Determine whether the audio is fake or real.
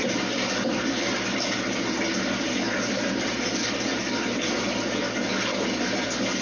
real